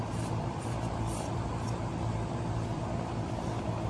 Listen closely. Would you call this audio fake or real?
fake